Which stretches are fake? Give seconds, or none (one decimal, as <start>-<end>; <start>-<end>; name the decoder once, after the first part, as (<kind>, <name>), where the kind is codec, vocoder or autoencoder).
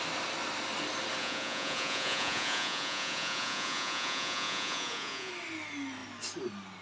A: 1.2-5.3 (vocoder, Vocos)